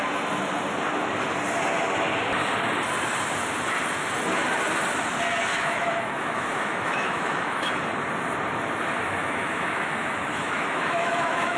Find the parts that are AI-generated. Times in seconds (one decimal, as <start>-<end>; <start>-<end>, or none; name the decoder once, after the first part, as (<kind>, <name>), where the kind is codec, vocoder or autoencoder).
5.5-7.7 (autoencoder, DAC-VAE); 9.2-11.6